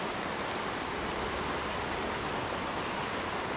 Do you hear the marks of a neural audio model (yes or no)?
no